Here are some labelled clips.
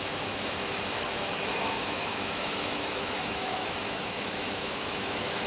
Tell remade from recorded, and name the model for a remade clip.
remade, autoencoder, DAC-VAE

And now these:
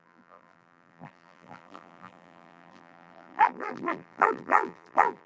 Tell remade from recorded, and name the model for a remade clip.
remade, vocoder, BigVGAN v2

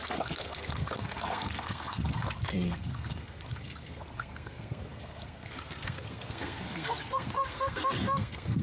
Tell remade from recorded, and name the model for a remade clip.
remade, codec, SNAC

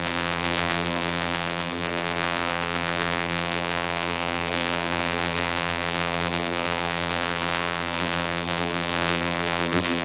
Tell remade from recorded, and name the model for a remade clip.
remade, vocoder, BigVGAN v2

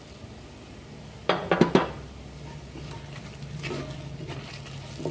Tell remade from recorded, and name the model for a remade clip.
recorded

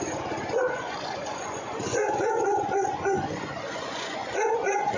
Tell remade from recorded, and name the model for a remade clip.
remade, vocoder, Vocos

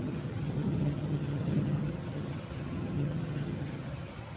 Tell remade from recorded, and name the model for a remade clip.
remade, vocoder, HiFi-GAN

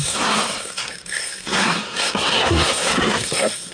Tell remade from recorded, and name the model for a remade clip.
remade, codec, SNAC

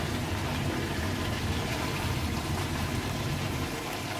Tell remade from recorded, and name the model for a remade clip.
remade, vocoder, BigVGAN v2